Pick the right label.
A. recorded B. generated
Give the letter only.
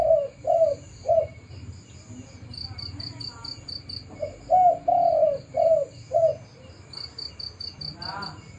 A